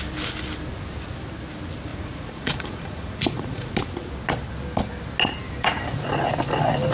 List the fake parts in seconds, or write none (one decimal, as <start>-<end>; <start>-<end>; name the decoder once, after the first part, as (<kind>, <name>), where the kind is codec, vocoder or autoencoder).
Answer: 1.9-3.7 (vocoder, Vocos)